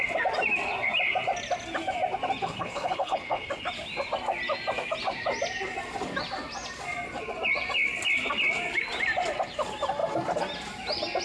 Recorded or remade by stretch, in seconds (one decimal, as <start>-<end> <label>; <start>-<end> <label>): 0.0-2.5 recorded; 2.5-3.5 remade; 3.5-11.2 recorded